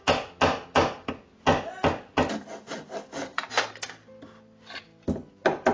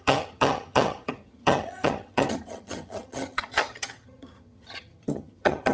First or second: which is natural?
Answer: first